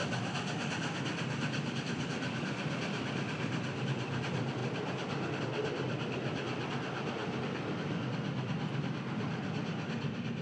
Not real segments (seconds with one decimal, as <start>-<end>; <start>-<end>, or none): none

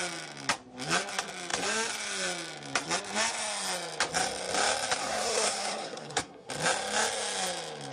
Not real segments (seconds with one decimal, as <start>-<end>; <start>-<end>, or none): 5.0-6.5

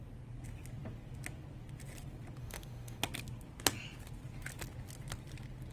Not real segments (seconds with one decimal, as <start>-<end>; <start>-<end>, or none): 2.4-3.0

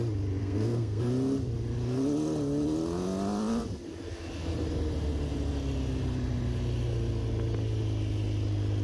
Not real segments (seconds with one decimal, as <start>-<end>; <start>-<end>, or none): 0.4-1.0

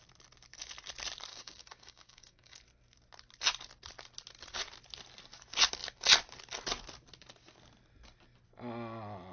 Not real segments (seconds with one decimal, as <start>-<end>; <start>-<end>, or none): 1.3-2.6

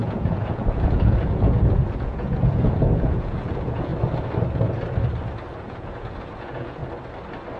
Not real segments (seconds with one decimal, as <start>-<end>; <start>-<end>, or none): 0.0-3.9; 5.6-6.8

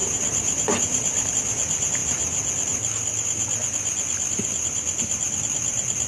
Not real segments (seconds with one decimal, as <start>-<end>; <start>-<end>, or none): none

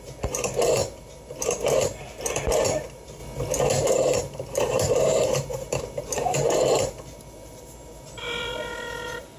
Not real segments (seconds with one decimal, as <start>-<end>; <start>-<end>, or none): 0.0-3.2; 3.7-9.4